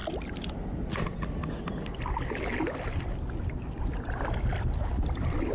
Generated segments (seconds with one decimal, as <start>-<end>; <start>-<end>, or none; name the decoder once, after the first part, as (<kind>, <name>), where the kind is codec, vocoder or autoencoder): none